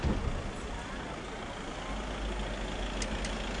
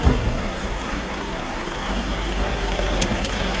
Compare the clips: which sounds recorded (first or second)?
first